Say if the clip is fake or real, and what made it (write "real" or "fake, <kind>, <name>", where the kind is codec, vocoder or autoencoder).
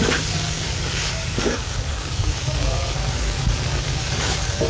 fake, codec, DAC